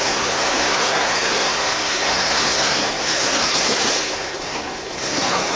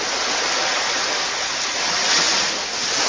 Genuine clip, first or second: second